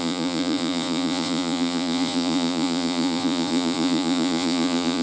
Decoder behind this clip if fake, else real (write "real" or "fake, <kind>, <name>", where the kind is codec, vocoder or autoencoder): fake, vocoder, Vocos